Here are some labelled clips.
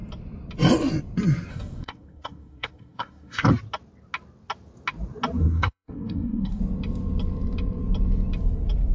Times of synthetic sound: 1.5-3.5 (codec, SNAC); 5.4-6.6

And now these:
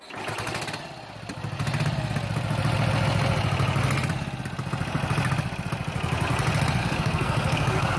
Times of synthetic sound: 6.8-8.0 (codec, SNAC)

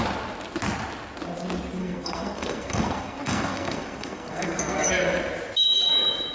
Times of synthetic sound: 1.8-4.9 (codec, SNAC)